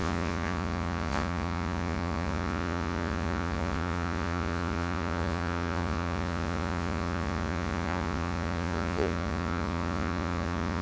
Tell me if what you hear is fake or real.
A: fake